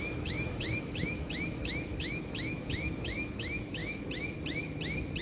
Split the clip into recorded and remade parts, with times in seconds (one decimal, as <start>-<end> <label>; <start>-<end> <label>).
0.0-3.8 remade; 3.8-5.2 recorded